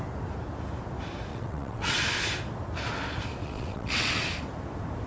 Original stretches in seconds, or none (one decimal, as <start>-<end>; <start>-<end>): 0.0-1.3; 2.0-3.4; 4.3-5.1